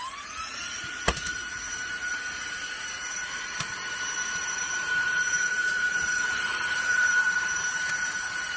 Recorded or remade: remade